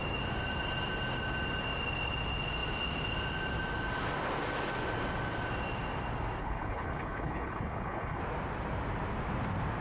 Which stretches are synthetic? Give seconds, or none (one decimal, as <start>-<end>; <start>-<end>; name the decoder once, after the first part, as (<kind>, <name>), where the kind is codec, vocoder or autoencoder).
6.4-8.2 (codec, HILCodec)